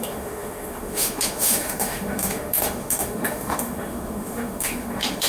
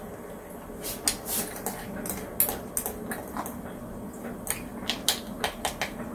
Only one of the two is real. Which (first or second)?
second